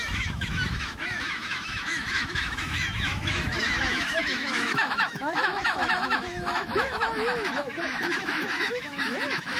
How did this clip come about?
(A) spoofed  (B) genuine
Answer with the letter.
A